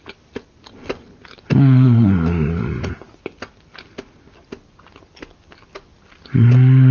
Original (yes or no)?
yes